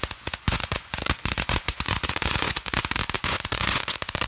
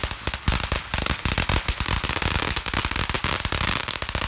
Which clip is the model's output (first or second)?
first